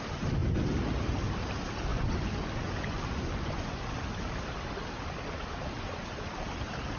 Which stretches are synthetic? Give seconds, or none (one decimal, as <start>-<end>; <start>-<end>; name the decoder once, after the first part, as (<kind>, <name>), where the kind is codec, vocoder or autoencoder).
1.9-3.8 (vocoder, Vocos)